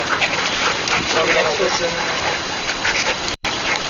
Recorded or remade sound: remade